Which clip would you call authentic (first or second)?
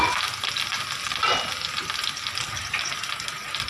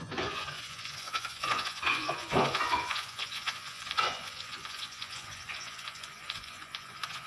first